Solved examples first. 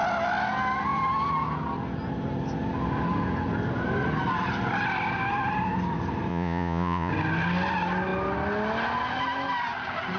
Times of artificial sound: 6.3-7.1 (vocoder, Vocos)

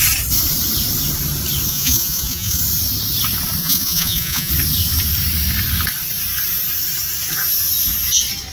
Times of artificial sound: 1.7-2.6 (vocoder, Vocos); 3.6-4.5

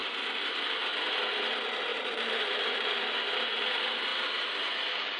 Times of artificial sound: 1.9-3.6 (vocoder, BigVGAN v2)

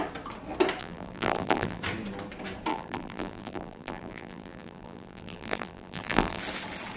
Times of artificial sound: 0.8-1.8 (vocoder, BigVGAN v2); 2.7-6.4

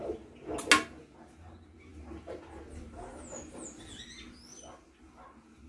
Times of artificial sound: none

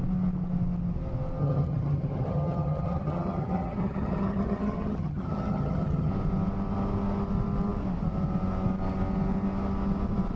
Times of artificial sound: 1.4-6.1 (vocoder, HiFi-GAN)

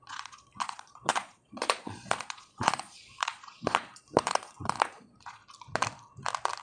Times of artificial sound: 0.0-5.4 (vocoder, Vocos)